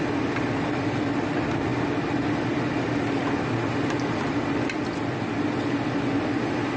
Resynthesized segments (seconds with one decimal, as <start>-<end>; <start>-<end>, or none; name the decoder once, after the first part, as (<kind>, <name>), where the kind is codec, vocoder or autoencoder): none